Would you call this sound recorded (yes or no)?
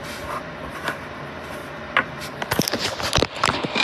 yes